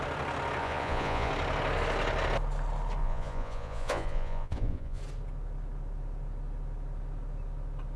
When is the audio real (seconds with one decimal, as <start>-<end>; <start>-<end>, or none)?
0.0-0.6; 1.3-3.0; 5.0-8.0